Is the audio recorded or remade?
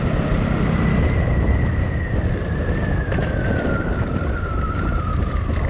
recorded